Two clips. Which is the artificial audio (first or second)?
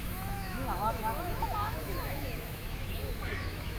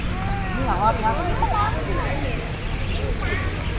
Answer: first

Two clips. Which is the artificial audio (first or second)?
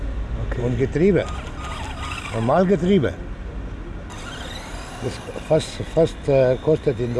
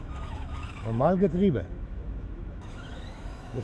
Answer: second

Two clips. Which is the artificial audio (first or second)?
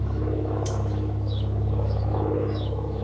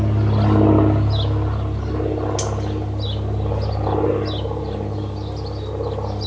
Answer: first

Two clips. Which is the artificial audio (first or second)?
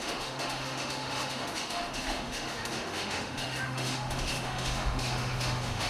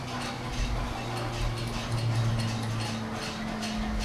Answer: first